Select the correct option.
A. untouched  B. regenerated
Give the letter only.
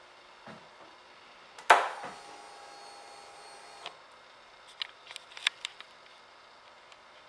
A